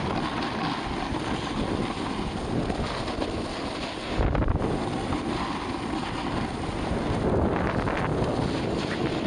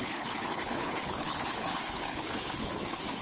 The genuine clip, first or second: first